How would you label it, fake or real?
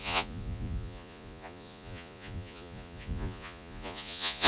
fake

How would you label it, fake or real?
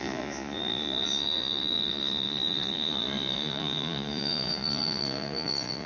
fake